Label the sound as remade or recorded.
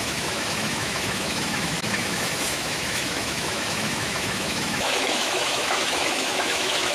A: remade